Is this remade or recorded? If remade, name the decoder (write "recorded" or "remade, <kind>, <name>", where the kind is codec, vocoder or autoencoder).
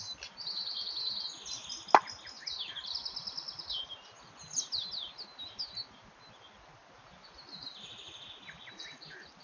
recorded